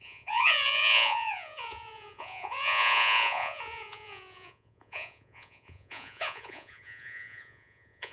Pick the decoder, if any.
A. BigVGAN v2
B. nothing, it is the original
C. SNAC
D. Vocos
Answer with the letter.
D